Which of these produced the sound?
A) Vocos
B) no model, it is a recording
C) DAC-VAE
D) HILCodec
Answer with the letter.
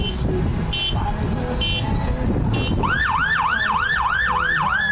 B